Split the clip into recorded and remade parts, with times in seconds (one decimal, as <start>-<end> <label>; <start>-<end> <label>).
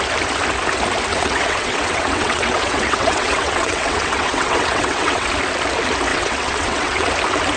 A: 0.0-1.1 recorded; 1.1-5.3 remade; 5.3-6.1 recorded; 6.1-7.1 remade; 7.1-7.6 recorded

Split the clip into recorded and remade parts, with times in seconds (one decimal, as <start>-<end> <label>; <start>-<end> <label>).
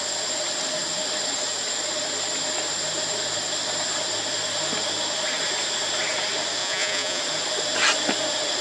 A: 0.0-6.6 recorded; 6.6-7.2 remade; 7.2-8.6 recorded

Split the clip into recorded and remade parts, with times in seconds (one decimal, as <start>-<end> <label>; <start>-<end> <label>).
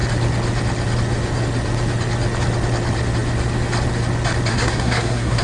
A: 0.0-4.5 recorded; 4.5-5.4 remade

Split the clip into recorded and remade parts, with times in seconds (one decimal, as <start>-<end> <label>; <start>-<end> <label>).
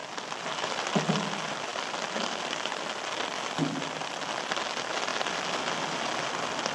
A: 0.0-6.7 recorded